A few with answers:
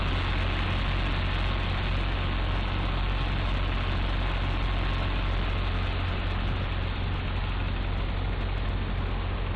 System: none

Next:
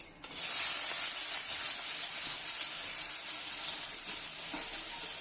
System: none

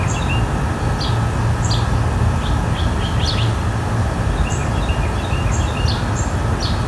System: none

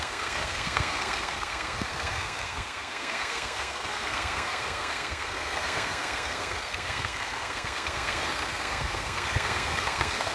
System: codec, SNAC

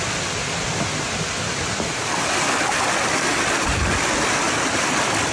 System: none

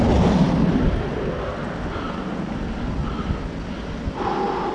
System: none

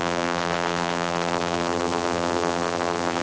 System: vocoder, BigVGAN v2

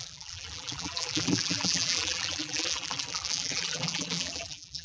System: vocoder, BigVGAN v2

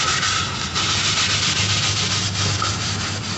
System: none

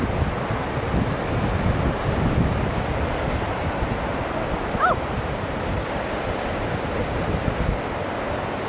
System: none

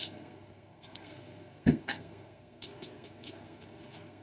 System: codec, SNAC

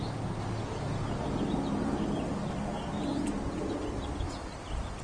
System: none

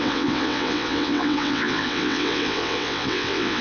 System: vocoder, WaveNeXt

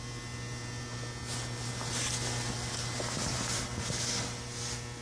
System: none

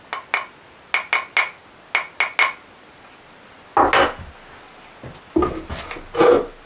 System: none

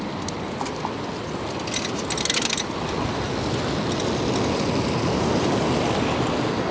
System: none